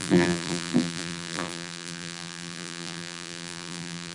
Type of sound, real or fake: fake